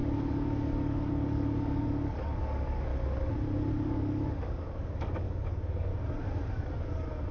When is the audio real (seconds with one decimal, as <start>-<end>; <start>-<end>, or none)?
2.9-3.7; 5.9-6.5